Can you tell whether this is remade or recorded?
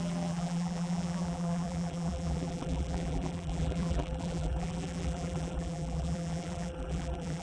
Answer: remade